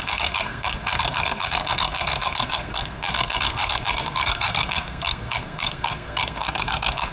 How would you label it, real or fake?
fake